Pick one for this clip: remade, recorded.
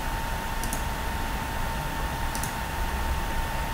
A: remade